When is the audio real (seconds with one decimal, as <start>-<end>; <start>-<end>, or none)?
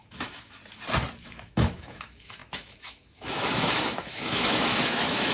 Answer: 0.6-1.2